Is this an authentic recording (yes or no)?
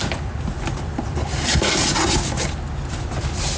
yes